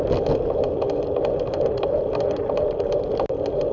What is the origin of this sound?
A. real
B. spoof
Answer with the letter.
A